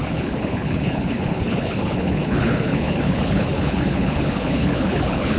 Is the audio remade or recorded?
remade